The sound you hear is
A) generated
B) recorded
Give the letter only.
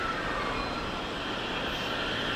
B